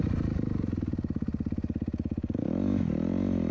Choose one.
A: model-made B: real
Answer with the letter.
B